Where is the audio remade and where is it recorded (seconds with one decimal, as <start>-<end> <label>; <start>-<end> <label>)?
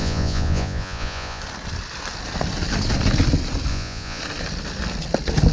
0.0-1.4 remade; 1.4-3.7 recorded; 3.7-4.2 remade; 4.2-5.5 recorded